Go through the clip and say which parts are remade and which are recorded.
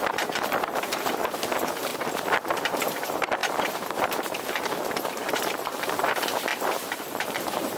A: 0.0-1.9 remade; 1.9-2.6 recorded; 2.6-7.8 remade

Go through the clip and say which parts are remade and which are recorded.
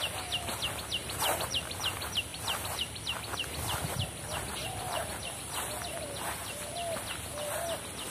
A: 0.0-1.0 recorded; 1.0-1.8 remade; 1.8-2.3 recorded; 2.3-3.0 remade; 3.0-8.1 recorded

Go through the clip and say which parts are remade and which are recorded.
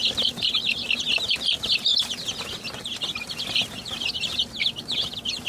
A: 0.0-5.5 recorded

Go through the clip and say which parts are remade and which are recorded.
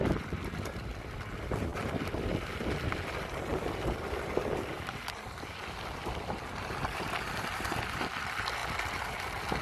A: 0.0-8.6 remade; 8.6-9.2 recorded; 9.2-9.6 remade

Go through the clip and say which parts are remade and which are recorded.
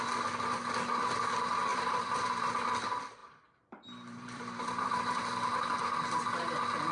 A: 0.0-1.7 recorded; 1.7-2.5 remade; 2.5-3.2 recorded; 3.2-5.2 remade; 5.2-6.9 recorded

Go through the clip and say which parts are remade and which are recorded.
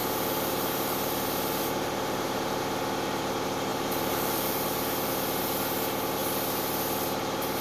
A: 0.0-2.6 remade; 2.6-3.7 recorded; 3.7-5.1 remade; 5.1-7.6 recorded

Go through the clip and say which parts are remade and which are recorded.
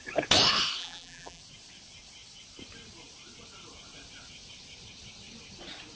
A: 0.0-0.8 recorded; 0.8-1.4 remade; 1.4-6.0 recorded